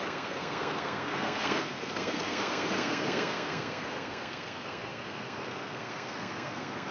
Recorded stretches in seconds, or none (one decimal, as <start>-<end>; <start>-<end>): none